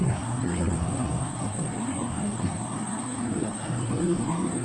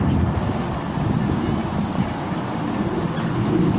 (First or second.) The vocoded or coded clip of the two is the first